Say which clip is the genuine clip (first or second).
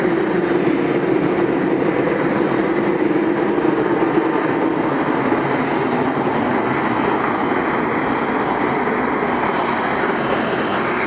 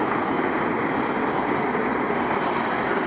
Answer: first